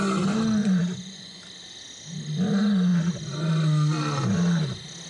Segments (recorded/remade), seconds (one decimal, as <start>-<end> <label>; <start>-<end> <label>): 0.0-0.6 recorded; 0.6-1.4 remade; 1.4-5.1 recorded